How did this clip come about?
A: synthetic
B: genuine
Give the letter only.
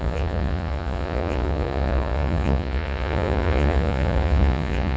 A